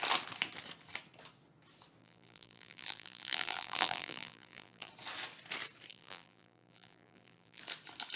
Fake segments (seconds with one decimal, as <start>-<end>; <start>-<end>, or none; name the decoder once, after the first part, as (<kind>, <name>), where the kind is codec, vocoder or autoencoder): 2.0-4.9 (vocoder, BigVGAN v2); 5.9-7.6